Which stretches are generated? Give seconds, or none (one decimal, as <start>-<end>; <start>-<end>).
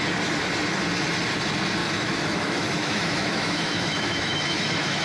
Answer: 1.8-5.0